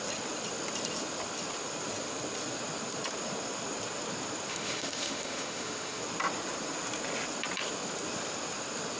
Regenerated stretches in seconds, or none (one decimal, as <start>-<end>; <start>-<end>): 4.5-6.0